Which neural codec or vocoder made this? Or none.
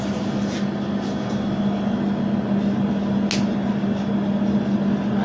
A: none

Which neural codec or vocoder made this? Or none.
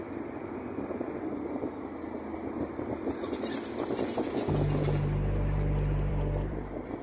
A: vocoder, BigVGAN v2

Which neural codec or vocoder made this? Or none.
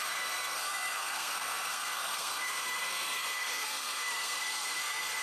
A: codec, SNAC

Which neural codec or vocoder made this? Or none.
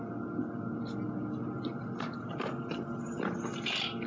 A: none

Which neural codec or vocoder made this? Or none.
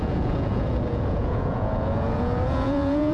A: vocoder, Vocos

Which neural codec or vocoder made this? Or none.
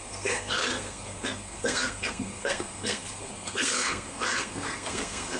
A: codec, SNAC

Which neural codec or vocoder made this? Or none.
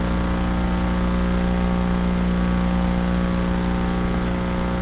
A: none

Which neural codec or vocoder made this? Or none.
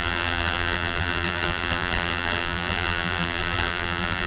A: vocoder, BigVGAN v2